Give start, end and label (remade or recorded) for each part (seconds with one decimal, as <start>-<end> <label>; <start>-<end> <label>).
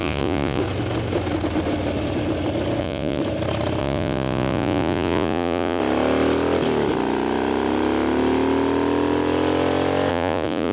0.0-0.6 remade; 0.6-2.8 recorded; 2.8-3.2 remade; 3.2-3.8 recorded; 3.8-5.8 remade; 5.8-10.1 recorded; 10.1-10.7 remade